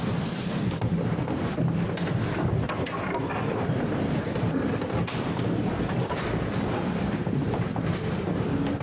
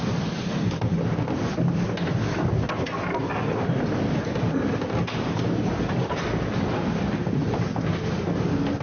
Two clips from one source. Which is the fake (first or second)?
first